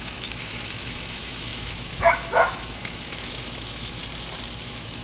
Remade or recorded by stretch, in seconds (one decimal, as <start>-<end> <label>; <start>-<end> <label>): 0.0-4.0 remade; 4.0-4.6 recorded; 4.6-5.0 remade